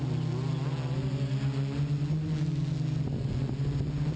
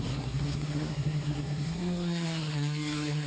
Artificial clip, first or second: second